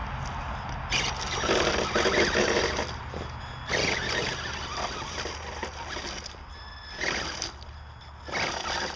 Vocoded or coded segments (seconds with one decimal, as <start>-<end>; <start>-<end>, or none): none